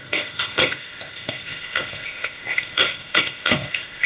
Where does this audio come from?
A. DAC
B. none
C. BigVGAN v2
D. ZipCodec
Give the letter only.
D